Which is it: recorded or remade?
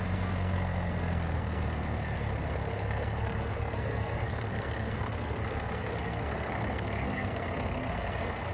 remade